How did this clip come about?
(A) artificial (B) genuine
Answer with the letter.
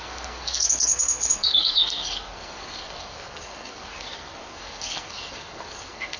A